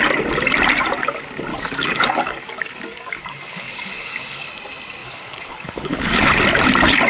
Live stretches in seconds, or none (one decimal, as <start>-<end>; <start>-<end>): 0.0-1.5; 4.5-5.0; 6.3-7.1